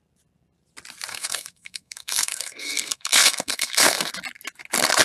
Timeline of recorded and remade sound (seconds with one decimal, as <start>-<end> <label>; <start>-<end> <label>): 0.0-1.1 recorded; 1.1-4.1 remade; 4.1-5.0 recorded